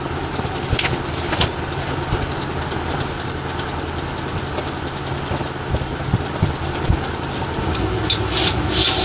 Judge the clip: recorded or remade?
recorded